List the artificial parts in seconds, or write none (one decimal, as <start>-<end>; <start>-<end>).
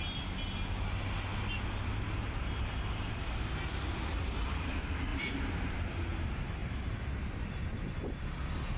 5.1-5.8; 6.6-8.2